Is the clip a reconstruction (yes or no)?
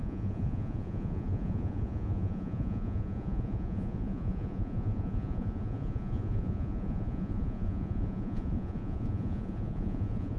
yes